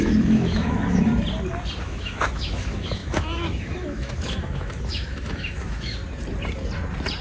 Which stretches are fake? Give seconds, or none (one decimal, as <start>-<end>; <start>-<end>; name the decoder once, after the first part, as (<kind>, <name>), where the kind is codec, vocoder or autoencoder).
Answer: 0.0-1.1 (autoencoder, DAC-VAE); 1.8-6.0